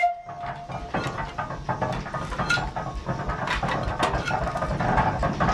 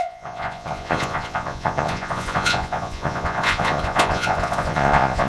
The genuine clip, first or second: first